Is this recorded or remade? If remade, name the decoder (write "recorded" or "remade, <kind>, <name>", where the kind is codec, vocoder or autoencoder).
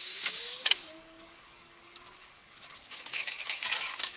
remade, codec, DAC